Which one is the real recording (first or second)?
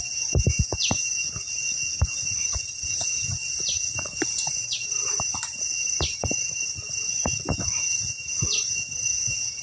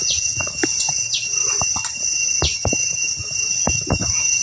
second